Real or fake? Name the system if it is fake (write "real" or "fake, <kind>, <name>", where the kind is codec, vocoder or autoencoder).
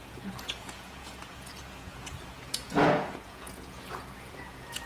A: fake, vocoder, Vocos